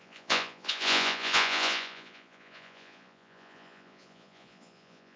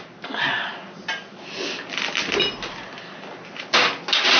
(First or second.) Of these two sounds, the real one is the second